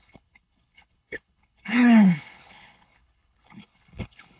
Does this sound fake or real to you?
fake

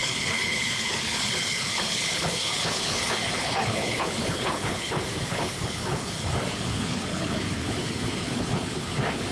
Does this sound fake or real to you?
fake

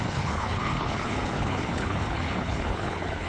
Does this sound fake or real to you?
fake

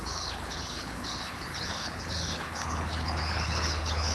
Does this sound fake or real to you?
fake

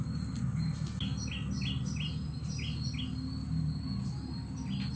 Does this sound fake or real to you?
real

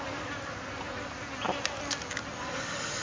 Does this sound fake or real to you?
real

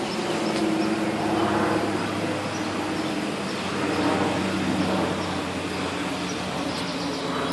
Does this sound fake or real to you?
real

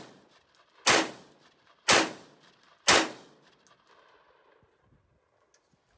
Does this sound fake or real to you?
real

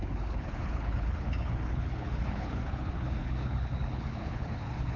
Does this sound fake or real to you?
fake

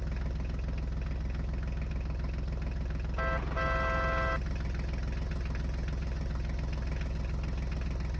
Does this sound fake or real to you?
real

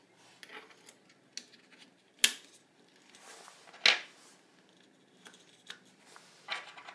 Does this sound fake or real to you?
real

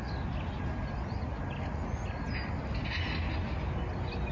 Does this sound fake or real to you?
real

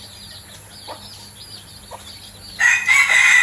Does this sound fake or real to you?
real